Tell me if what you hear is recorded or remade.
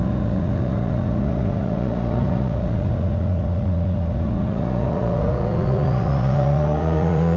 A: remade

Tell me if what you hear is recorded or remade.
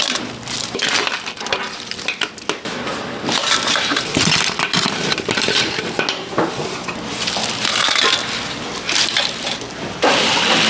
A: recorded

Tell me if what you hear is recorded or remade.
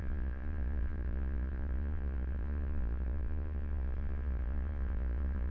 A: remade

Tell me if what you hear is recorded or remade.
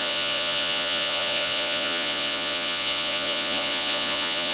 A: remade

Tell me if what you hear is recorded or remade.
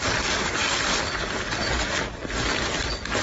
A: recorded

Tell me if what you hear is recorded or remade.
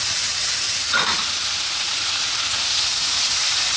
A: remade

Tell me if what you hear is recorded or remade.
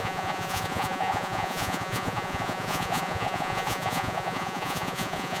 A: remade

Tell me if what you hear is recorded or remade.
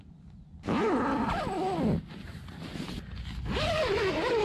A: recorded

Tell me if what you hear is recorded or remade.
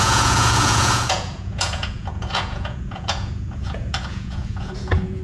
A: remade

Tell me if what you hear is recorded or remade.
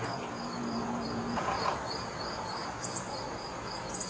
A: remade